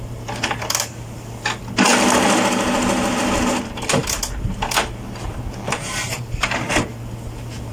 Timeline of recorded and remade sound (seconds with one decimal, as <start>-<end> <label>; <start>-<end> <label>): 0.0-7.7 recorded